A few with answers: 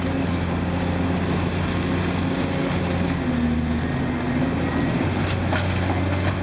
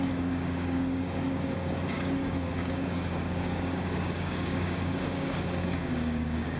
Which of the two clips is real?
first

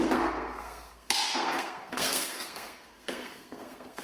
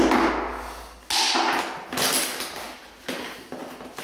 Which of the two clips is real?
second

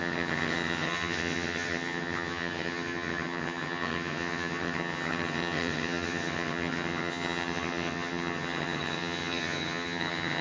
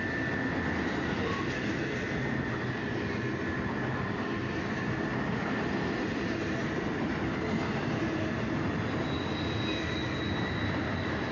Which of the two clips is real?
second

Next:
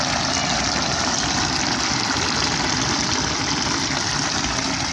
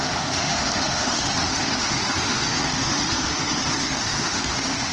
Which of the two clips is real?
first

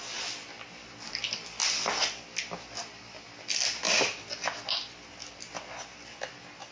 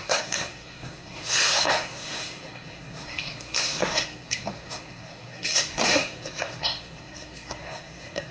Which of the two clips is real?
first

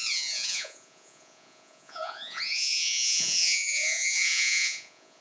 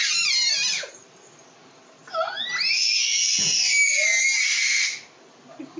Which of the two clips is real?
second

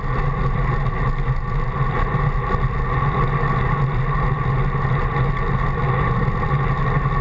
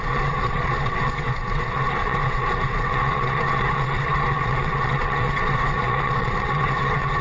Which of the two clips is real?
first